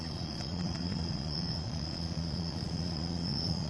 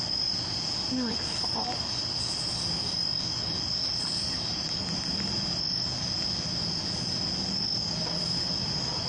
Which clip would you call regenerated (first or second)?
first